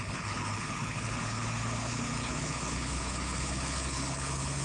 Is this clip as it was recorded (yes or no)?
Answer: no